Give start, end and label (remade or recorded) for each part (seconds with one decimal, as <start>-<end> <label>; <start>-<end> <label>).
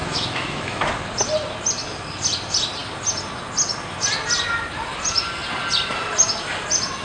0.0-0.9 remade; 0.9-7.0 recorded